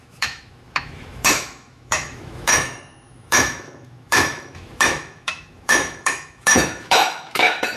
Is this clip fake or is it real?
fake